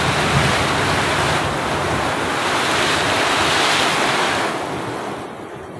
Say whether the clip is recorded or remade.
recorded